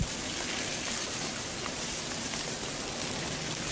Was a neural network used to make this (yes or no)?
no